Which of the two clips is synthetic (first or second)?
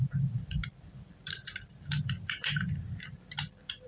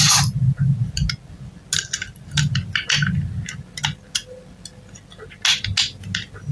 first